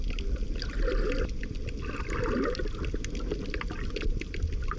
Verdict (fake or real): real